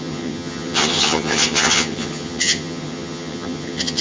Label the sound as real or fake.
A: fake